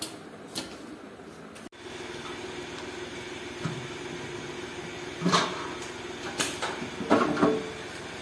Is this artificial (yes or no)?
no